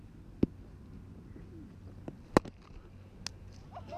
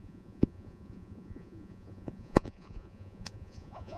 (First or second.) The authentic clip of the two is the first